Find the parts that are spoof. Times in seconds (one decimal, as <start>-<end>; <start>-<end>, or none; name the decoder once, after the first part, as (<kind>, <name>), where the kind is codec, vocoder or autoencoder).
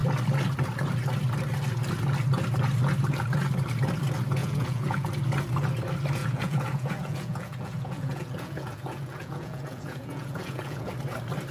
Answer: 4.4-5.1 (vocoder, Vocos); 6.2-10.9